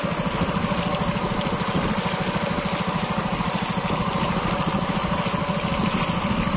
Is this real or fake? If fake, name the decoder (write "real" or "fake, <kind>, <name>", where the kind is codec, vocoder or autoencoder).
real